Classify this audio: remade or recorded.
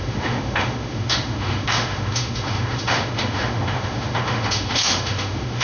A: remade